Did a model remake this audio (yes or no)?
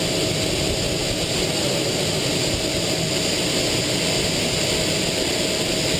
no